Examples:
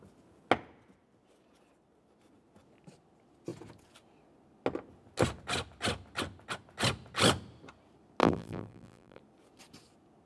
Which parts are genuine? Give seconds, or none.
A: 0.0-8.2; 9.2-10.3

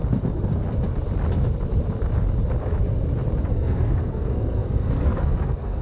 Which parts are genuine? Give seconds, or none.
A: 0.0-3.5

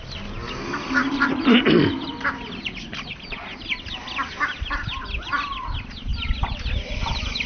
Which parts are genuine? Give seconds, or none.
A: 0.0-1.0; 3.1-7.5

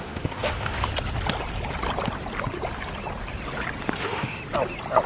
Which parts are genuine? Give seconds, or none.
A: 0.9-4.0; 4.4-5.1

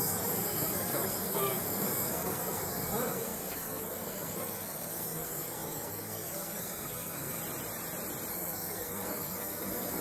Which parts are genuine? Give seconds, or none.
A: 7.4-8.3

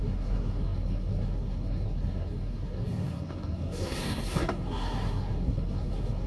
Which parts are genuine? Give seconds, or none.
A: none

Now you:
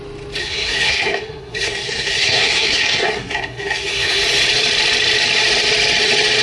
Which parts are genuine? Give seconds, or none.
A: 0.0-0.4; 4.2-6.4